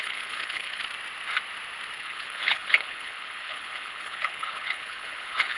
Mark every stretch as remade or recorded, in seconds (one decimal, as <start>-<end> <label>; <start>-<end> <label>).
0.0-0.8 remade; 0.8-2.0 recorded; 2.0-5.6 remade